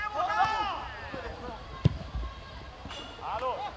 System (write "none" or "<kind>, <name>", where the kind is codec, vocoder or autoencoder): none